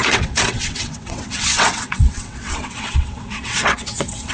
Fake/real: fake